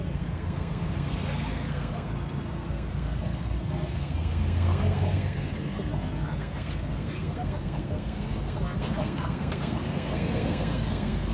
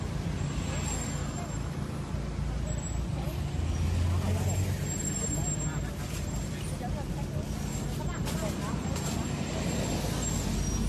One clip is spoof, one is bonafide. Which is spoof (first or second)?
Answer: first